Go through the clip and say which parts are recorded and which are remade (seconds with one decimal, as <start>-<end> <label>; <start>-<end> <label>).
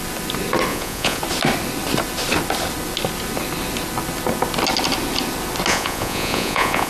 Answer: 0.0-0.7 recorded; 0.7-1.2 remade; 1.2-5.7 recorded; 5.7-6.9 remade